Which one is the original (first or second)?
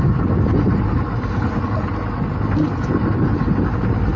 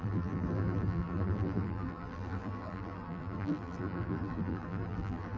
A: first